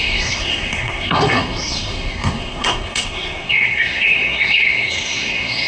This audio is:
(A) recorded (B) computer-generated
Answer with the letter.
B